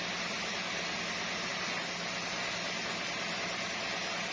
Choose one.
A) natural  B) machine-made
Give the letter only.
A